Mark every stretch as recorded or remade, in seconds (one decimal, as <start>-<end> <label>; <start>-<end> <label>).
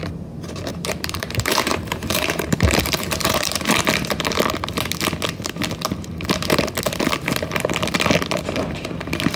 0.0-0.7 recorded; 0.7-3.8 remade; 3.8-9.4 recorded